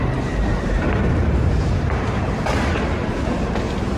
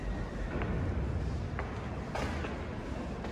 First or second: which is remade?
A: first